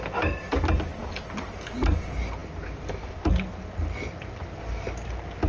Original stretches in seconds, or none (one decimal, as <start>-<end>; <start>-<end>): 0.0-5.5